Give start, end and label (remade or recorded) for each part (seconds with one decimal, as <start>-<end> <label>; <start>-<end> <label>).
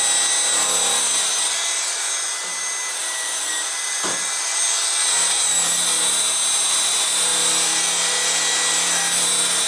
0.0-9.7 recorded